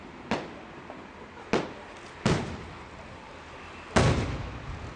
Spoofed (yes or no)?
no